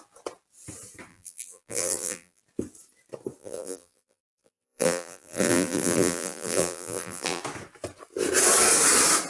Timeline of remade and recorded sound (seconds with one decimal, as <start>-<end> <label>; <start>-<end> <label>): 0.0-1.1 recorded; 1.1-2.4 remade; 2.4-3.4 recorded; 3.4-7.4 remade; 7.4-9.3 recorded